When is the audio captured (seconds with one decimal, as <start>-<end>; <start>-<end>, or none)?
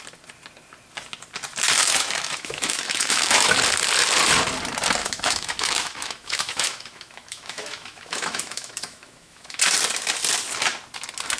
0.0-1.8; 3.6-5.0; 9.6-11.4